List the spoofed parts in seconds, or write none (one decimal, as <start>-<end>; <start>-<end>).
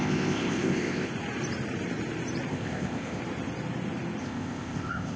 0.0-1.1; 2.5-3.2; 4.2-5.2